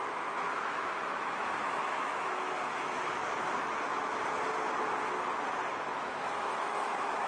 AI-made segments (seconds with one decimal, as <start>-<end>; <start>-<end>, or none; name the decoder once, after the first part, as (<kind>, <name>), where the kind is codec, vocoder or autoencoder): 0.0-3.9 (autoencoder, DAC-VAE); 5.8-7.3